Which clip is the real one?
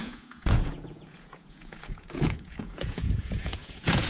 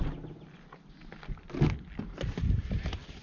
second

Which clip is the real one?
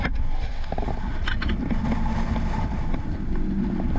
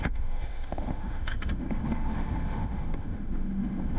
first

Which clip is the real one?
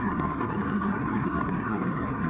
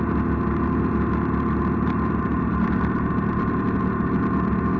second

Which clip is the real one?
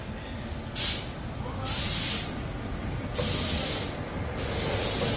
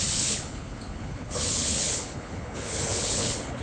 first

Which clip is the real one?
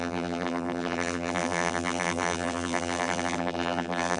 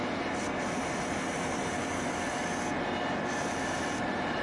second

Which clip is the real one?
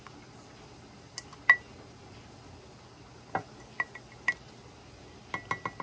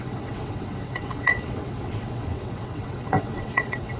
first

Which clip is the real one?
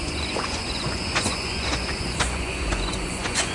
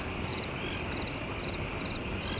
second